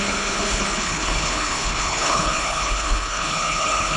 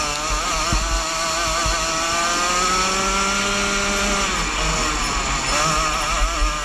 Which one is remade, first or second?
first